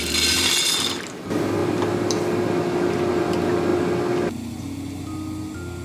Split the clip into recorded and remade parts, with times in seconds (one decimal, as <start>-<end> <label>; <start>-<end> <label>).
0.0-5.8 recorded